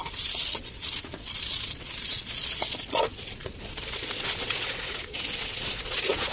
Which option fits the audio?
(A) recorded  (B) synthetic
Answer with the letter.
B